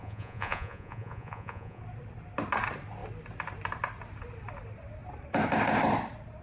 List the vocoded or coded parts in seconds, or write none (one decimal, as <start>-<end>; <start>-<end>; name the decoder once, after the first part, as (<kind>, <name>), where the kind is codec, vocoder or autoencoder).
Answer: 0.0-1.8 (vocoder, Vocos)